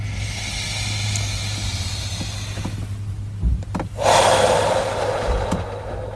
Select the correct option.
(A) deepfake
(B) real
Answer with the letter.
B